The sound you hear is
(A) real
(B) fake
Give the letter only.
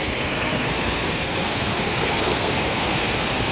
B